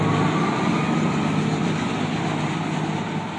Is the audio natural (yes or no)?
yes